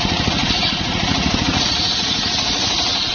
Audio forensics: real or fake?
fake